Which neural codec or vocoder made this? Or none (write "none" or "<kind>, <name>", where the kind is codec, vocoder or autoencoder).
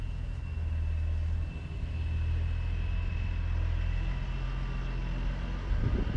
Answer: none